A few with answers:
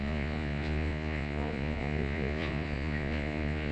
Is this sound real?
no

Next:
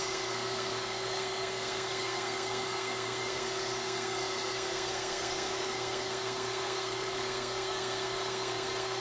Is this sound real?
no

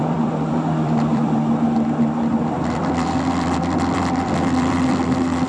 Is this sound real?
no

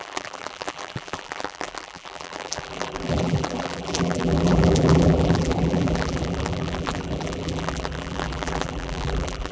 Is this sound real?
no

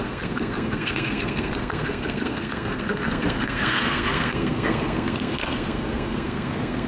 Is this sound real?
no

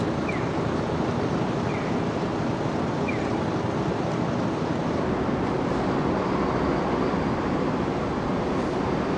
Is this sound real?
yes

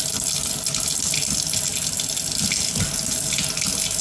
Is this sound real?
yes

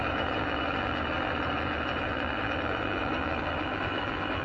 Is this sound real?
no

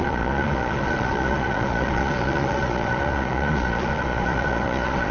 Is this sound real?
no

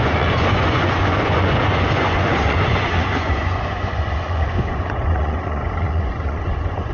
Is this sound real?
no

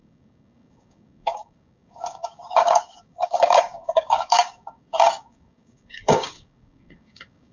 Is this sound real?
no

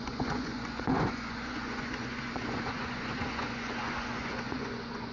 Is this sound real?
no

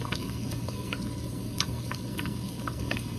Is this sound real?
no